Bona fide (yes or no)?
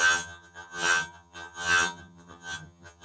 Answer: no